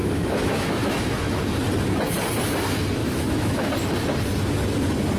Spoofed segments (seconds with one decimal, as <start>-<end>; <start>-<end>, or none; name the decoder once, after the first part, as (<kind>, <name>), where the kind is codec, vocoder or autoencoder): 0.0-1.3 (autoencoder, DAC-VAE); 3.0-3.7